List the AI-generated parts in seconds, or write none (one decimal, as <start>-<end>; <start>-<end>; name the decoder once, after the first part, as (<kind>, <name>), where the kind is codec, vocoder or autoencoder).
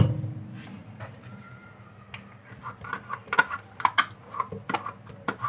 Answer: 0.8-1.9 (vocoder, BigVGAN v2); 3.2-4.0